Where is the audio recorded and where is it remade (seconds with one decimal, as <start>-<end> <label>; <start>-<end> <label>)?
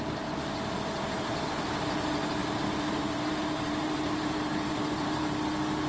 0.0-2.4 recorded; 2.4-5.4 remade; 5.4-5.9 recorded